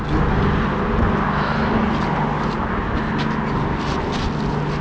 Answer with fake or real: real